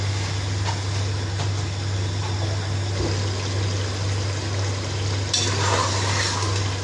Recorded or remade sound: recorded